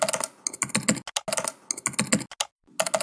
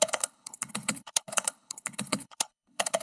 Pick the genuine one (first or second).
first